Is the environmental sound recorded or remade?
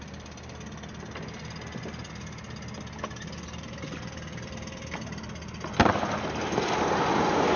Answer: recorded